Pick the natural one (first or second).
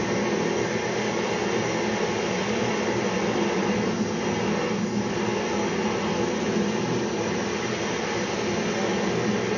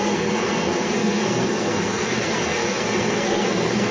first